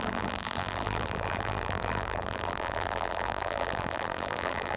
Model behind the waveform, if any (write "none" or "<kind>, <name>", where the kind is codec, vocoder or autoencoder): vocoder, BigVGAN v2